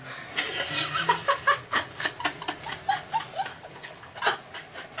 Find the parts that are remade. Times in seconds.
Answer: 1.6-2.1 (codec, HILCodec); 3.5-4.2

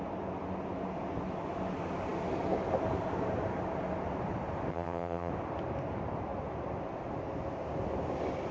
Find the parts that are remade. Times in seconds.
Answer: 4.7-5.3 (vocoder, HiFi-GAN)

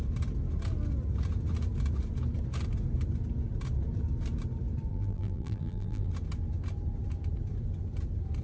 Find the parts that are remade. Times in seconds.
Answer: 4.9-6.1 (vocoder, BigVGAN v2)

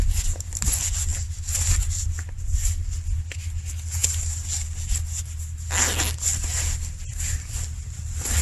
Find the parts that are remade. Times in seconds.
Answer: none

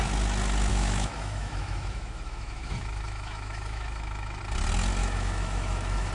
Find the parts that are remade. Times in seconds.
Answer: 0.7-4.4 (autoencoder, DAC-VAE); 5.0-6.1